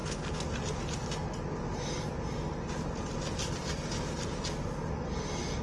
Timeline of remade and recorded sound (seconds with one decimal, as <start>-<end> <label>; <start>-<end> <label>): 0.0-5.6 recorded